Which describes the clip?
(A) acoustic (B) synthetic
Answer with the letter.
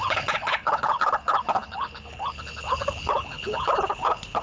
B